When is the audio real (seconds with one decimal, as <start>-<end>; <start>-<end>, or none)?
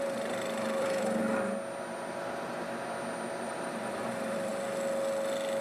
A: 1.2-3.3; 4.5-5.6